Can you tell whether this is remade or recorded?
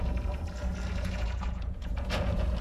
remade